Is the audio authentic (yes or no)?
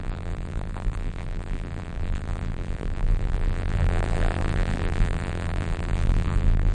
no